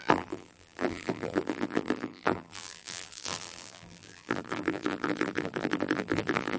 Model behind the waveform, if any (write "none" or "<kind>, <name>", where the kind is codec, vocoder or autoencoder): vocoder, BigVGAN v2